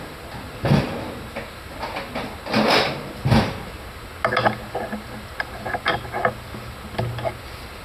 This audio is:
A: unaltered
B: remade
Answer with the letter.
A